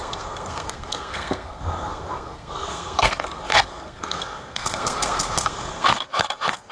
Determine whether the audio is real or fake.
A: fake